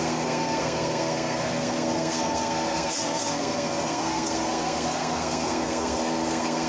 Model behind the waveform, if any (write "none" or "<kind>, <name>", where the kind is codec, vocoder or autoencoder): codec, SNAC